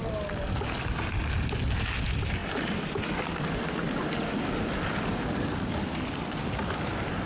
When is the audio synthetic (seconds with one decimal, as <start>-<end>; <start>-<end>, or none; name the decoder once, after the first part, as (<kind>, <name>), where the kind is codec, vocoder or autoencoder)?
none